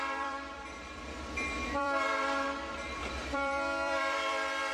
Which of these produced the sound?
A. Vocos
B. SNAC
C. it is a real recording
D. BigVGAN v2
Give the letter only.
D